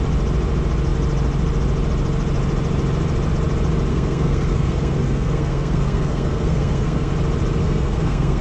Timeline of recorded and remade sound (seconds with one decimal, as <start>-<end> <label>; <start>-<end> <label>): 0.0-3.9 recorded; 3.9-7.1 remade; 7.1-7.6 recorded; 7.6-8.4 remade